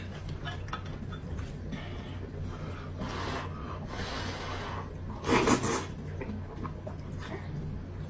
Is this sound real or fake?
real